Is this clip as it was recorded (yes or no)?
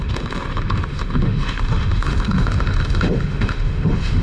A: no